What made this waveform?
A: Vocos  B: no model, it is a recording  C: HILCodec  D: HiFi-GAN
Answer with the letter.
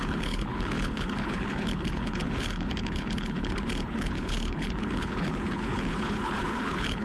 C